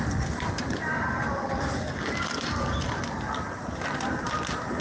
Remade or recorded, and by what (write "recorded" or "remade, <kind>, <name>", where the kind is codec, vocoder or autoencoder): remade, vocoder, BigVGAN v2